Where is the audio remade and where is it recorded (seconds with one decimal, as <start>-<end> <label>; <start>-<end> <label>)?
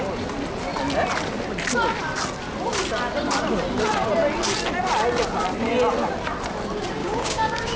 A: 0.0-7.0 recorded; 7.0-7.8 remade